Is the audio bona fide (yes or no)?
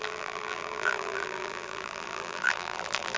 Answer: no